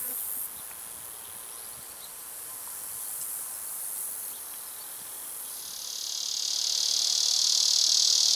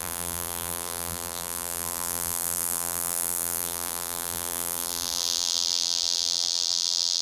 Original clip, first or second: first